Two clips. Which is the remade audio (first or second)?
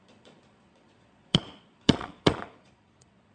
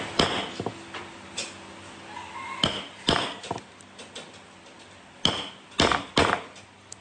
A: first